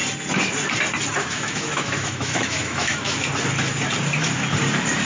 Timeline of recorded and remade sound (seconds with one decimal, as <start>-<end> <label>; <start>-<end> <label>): 0.0-1.2 recorded; 1.2-3.3 remade; 3.3-5.1 recorded